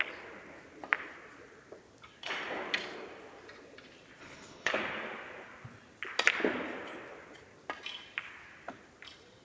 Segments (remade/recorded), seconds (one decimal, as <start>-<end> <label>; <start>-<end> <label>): 0.0-4.2 recorded; 4.2-4.7 remade; 4.7-9.4 recorded